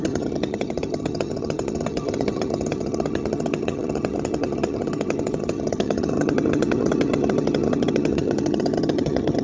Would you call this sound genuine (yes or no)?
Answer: no